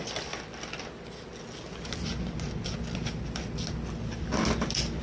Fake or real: real